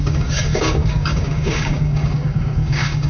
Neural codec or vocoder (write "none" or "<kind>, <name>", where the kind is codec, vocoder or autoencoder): codec, DAC